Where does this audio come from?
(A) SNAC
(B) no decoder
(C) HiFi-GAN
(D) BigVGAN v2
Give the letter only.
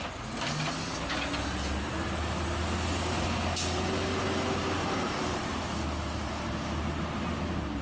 B